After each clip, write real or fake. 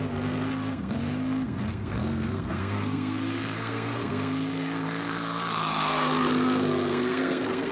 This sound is fake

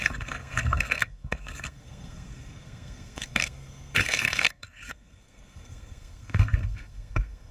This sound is fake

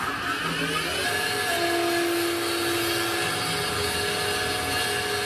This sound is real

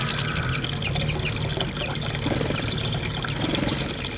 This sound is real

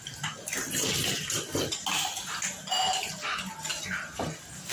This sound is real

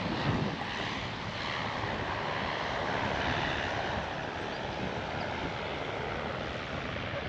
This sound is real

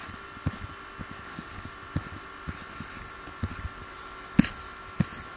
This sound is real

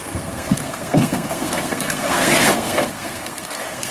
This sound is fake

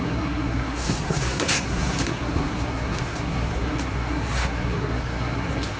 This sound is fake